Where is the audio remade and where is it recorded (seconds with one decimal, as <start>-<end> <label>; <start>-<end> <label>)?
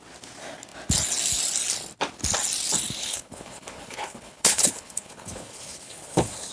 0.0-3.0 recorded; 3.0-6.5 remade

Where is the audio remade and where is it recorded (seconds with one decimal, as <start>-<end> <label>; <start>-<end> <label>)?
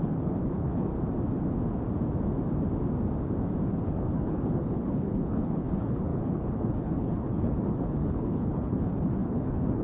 0.0-0.9 remade; 0.9-3.7 recorded; 3.7-9.8 remade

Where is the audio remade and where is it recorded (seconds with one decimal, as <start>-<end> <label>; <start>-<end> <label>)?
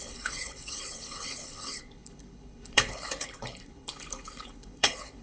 0.0-5.2 remade